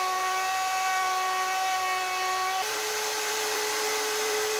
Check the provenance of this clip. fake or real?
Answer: fake